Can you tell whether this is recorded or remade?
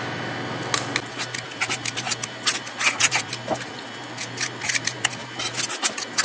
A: recorded